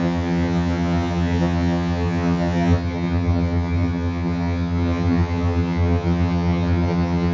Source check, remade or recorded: remade